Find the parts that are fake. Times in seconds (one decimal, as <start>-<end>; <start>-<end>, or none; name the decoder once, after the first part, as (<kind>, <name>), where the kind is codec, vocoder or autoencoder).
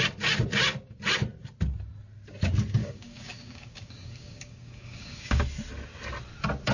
2.8-5.4 (codec, DAC)